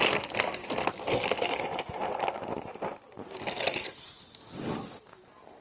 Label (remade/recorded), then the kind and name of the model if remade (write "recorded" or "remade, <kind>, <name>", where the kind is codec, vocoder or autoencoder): recorded